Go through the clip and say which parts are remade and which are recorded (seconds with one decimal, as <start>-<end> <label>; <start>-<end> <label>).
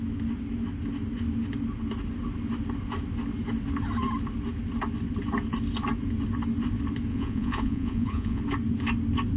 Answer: 0.0-7.1 recorded; 7.1-8.4 remade; 8.4-9.4 recorded